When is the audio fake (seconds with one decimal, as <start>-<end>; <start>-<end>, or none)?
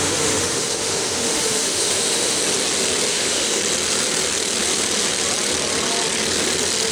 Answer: 0.0-2.4; 3.1-3.6